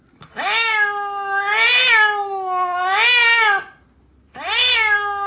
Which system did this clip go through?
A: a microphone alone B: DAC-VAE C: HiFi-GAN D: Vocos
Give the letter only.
A